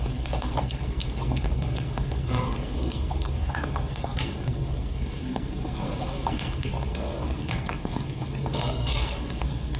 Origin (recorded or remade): remade